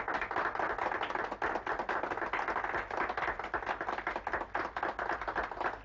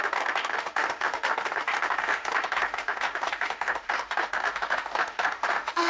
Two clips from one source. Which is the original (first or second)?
first